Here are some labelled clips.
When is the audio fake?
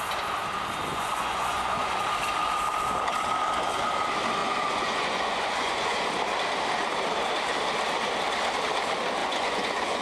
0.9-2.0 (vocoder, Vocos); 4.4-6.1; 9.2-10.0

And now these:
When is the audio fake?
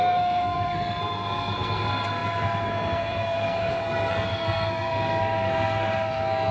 0.0-6.5 (codec, SNAC)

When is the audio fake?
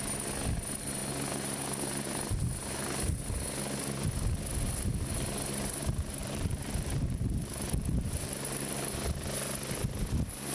6.2-8.9 (vocoder, BigVGAN v2)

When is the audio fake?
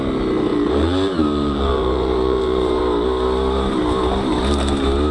0.5-2.8 (vocoder, BigVGAN v2)